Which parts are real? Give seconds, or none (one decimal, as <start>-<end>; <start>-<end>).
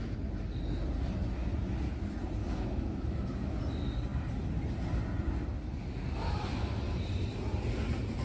0.0-2.4; 3.6-8.2